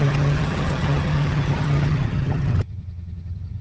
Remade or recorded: remade